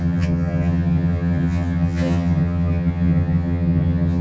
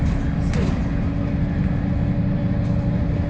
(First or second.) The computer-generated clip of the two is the first